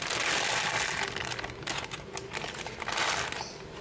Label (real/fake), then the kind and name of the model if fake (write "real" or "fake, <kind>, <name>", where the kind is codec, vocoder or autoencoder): real